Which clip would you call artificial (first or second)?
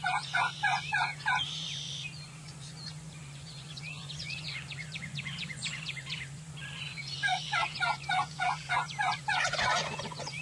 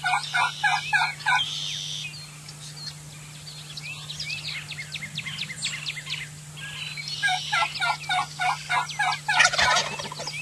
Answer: first